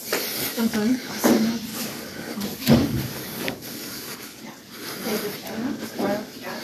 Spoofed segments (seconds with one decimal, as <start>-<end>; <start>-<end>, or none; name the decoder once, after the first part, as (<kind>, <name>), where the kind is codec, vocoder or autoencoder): 0.5-1.1 (codec, DAC); 1.7-4.4